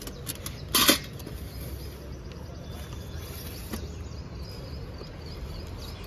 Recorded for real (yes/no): yes